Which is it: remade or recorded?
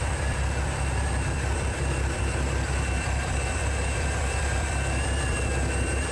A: remade